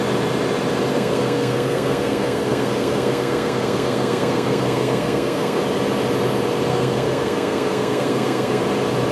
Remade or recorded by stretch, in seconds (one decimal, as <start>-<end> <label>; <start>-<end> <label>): 0.0-0.9 recorded; 0.9-5.6 remade; 5.6-6.7 recorded; 6.7-8.6 remade; 8.6-9.1 recorded